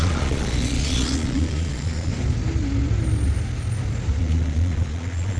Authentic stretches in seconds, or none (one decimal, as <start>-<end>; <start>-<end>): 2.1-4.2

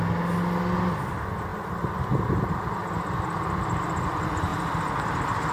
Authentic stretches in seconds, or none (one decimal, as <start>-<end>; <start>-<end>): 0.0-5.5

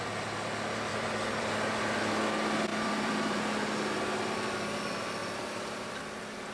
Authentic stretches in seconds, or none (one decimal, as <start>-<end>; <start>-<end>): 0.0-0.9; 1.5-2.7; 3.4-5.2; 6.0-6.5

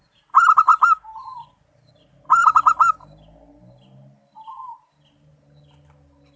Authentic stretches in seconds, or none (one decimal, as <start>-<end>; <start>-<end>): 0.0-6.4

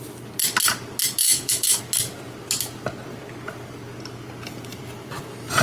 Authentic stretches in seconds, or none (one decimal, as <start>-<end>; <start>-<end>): 0.0-1.2; 1.8-5.6

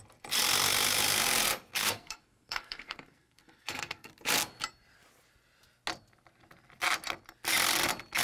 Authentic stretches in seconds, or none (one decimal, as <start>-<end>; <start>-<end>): 0.0-1.7; 4.1-8.2

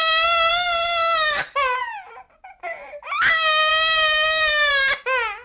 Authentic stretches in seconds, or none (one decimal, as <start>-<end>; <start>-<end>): 0.0-1.8; 2.9-5.4

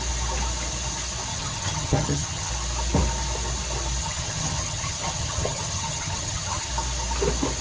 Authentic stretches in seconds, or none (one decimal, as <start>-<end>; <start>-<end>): 0.0-1.3; 2.5-4.0; 6.7-7.6